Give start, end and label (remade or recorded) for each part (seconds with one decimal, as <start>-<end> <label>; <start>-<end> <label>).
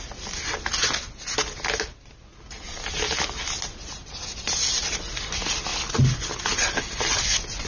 0.0-7.7 recorded